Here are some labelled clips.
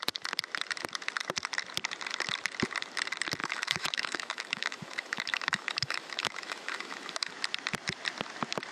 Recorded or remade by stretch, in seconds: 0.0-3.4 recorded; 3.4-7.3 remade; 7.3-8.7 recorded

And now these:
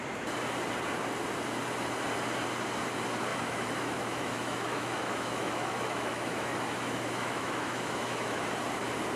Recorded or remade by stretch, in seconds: 0.0-3.3 recorded; 3.3-8.4 remade; 8.4-9.2 recorded

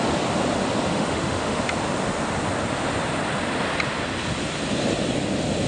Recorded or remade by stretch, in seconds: 0.0-0.9 recorded; 0.9-1.6 remade; 1.6-5.7 recorded

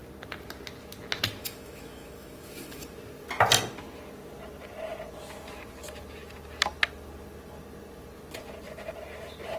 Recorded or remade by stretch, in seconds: 0.0-1.4 recorded; 1.4-2.8 remade; 2.8-9.6 recorded

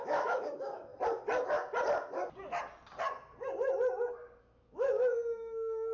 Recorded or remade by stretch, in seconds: 0.0-0.9 remade; 0.9-4.4 recorded; 4.4-5.9 remade